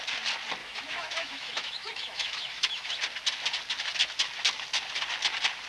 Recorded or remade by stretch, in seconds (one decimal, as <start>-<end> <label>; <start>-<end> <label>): 0.0-0.6 recorded; 0.6-2.9 remade; 2.9-5.7 recorded